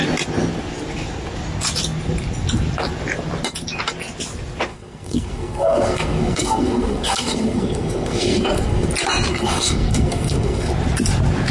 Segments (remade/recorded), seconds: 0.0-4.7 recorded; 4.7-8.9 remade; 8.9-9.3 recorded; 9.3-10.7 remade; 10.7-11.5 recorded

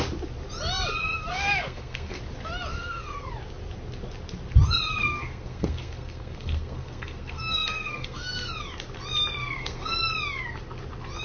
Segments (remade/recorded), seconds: 0.0-1.0 recorded; 1.0-2.2 remade; 2.2-2.7 recorded; 2.7-3.3 remade; 3.3-5.0 recorded; 5.0-8.5 remade; 8.5-9.4 recorded; 9.4-10.0 remade; 10.0-11.2 recorded

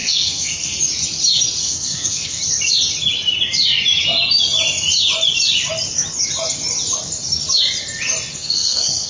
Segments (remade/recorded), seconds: 0.0-0.8 remade; 0.8-1.6 recorded; 1.6-2.4 remade; 2.4-8.3 recorded; 8.3-9.1 remade

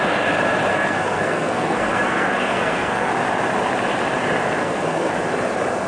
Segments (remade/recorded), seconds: 0.0-0.7 recorded; 0.7-3.1 remade; 3.1-4.6 recorded; 4.6-5.1 remade; 5.1-5.9 recorded

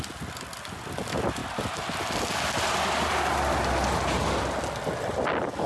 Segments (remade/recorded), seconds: 0.0-5.7 recorded